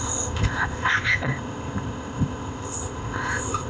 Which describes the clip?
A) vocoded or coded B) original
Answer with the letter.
A